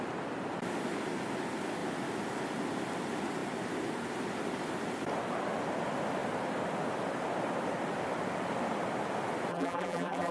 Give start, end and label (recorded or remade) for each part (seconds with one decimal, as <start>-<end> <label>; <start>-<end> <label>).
0.0-9.5 recorded; 9.5-10.3 remade